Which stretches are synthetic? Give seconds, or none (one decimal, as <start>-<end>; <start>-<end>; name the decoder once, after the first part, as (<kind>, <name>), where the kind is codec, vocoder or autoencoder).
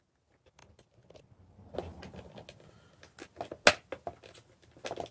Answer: none